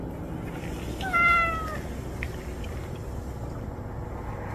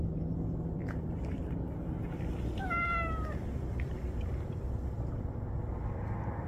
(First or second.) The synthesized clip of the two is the second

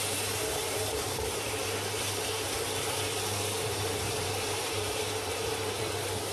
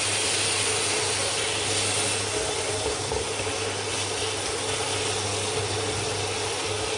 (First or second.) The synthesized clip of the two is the first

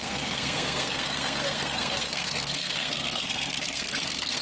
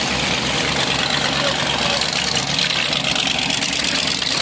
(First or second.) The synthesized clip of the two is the first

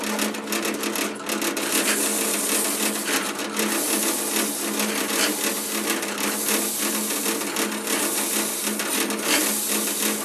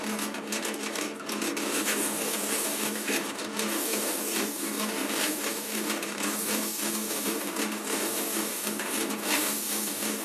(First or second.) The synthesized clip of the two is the second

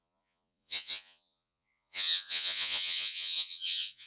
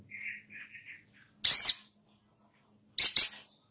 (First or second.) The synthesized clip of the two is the first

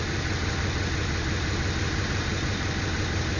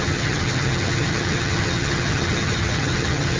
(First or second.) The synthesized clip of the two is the second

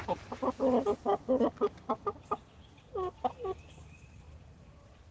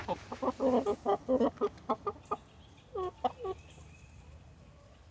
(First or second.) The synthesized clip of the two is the first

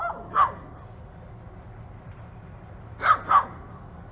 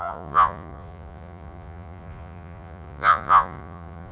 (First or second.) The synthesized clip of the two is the second